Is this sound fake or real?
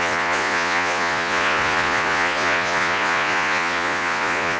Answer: fake